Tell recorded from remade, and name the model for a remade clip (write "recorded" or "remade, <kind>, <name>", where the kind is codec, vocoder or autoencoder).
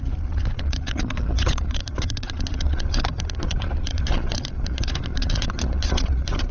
remade, vocoder, Vocos